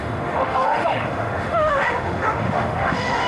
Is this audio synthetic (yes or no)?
yes